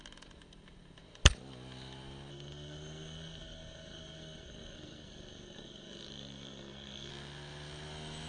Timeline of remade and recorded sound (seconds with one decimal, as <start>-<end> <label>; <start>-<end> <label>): 0.0-2.3 recorded; 2.3-7.1 remade; 7.1-8.3 recorded